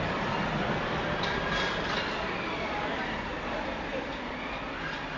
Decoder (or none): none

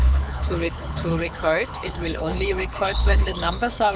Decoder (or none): codec, HILCodec